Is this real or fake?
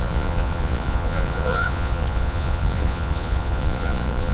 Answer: fake